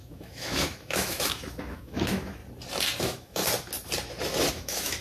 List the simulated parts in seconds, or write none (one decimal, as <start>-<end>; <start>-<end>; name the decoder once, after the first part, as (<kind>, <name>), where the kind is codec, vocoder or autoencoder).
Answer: 0.0-2.4 (autoencoder, DAC-VAE); 3.0-3.4; 4.5-5.0